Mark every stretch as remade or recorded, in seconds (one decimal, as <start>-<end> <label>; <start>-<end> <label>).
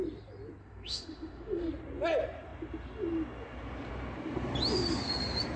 0.0-0.6 recorded; 0.6-1.7 remade; 1.7-5.6 recorded